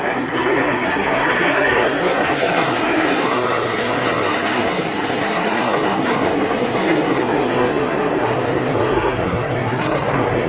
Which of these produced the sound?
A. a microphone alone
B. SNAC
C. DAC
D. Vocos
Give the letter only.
B